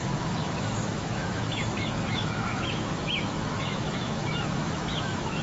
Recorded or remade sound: remade